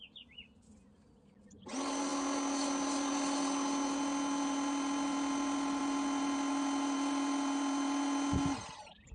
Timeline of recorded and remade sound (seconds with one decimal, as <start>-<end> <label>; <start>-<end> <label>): 0.0-9.1 recorded